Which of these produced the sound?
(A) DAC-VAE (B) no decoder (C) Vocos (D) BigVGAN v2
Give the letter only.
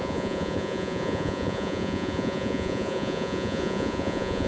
C